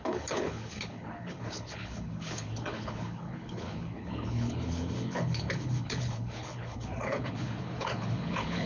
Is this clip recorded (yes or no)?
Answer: no